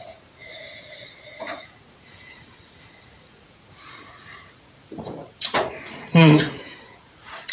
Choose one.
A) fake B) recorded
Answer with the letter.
A